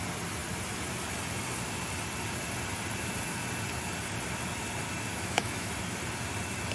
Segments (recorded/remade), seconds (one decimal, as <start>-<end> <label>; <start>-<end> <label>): 0.0-5.1 recorded; 5.1-5.7 remade; 5.7-6.7 recorded